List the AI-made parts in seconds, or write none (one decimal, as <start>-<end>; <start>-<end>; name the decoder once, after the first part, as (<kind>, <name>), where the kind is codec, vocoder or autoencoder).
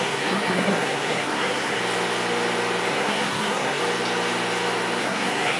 0.0-1.8 (codec, SNAC); 2.9-3.8; 5.0-5.6